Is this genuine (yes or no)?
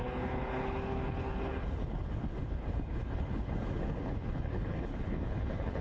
no